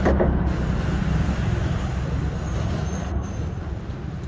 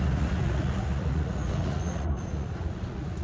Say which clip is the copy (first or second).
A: second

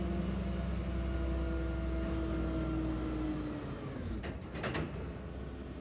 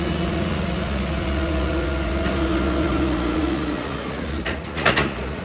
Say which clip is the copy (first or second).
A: second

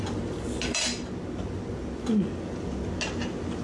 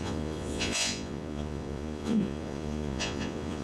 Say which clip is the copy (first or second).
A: second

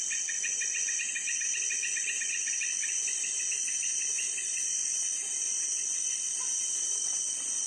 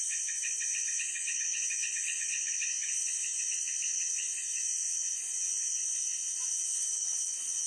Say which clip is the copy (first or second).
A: second